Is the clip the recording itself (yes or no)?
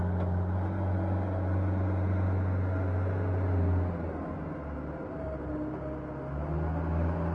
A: yes